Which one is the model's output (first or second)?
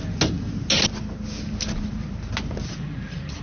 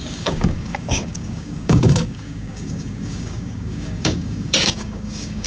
second